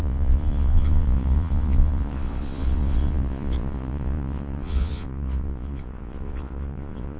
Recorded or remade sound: remade